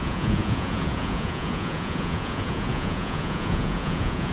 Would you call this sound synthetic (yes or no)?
yes